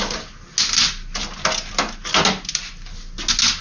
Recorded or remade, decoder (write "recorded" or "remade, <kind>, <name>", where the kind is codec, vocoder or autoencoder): recorded